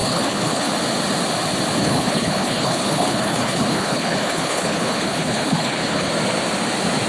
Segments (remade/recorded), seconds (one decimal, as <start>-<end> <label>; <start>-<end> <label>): 0.0-0.7 remade; 0.7-1.8 recorded; 1.8-6.1 remade; 6.1-7.1 recorded